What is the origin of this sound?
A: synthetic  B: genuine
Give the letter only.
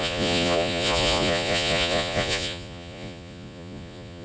A